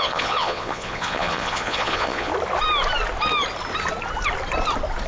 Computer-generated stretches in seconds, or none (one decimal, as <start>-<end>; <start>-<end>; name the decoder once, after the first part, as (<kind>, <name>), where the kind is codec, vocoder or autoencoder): 0.0-2.3 (vocoder, Vocos)

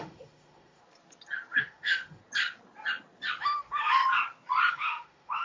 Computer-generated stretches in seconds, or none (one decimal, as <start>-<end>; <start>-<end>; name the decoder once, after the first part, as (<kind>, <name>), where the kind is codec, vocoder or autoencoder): 0.0-0.8 (autoencoder, DAC-VAE); 1.6-2.2; 3.4-4.0; 4.7-5.4